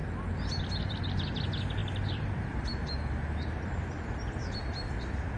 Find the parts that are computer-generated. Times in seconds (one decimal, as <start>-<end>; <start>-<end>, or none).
1.8-5.0